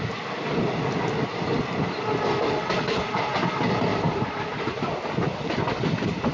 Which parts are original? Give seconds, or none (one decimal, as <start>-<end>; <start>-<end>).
0.0-3.9; 4.8-6.3